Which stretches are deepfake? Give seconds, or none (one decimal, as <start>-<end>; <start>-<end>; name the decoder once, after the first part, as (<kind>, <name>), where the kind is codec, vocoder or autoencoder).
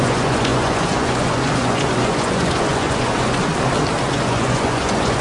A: 0.0-3.5 (vocoder, Vocos); 4.1-5.2